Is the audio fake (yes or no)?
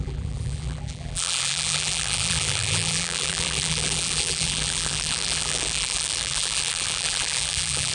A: yes